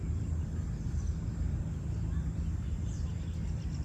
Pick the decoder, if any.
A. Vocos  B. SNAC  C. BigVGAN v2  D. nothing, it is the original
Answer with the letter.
D